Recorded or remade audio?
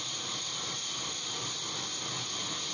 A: recorded